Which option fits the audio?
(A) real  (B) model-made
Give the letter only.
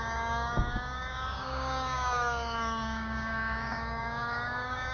B